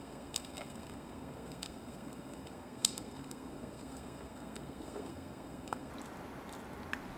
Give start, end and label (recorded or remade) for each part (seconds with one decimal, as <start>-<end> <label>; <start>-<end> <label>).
0.0-5.9 remade; 5.9-7.2 recorded